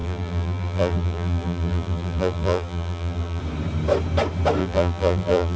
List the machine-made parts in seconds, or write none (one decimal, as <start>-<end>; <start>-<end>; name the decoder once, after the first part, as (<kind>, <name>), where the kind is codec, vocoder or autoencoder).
0.0-3.4 (vocoder, BigVGAN v2); 4.6-5.6